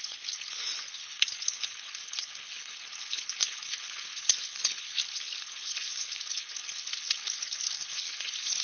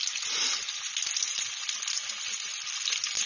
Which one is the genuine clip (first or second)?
second